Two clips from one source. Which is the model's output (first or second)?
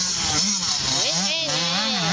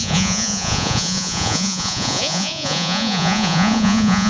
second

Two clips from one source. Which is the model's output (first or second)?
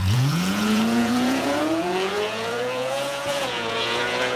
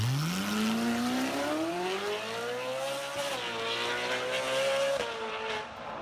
first